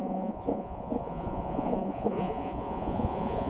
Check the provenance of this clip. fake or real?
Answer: fake